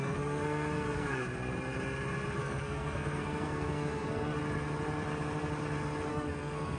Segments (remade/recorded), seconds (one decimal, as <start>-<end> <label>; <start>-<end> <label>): 0.0-1.2 remade; 1.2-2.4 recorded; 2.4-4.4 remade; 4.4-6.1 recorded; 6.1-6.8 remade